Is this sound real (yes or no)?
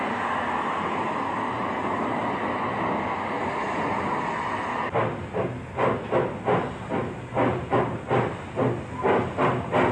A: yes